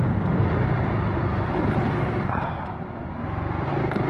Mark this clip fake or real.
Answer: real